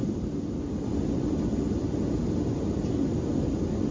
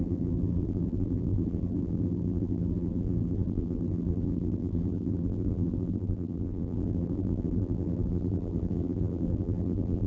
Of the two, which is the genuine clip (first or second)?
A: first